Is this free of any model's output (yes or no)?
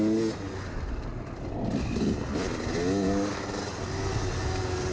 yes